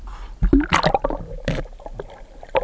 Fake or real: real